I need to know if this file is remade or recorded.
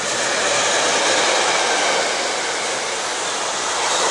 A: recorded